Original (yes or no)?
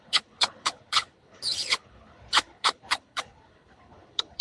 no